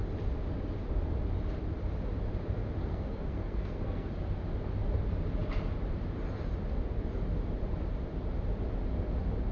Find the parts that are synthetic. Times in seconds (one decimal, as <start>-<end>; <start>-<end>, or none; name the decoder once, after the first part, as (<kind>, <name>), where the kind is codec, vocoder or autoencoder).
2.8-4.1 (codec, SNAC)